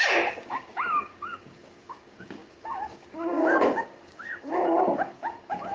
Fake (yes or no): yes